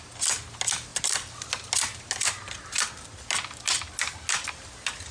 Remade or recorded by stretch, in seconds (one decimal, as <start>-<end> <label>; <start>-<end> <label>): 0.0-5.1 recorded